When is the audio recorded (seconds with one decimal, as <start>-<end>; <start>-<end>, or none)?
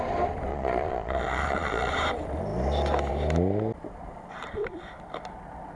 0.0-0.5; 1.9-5.8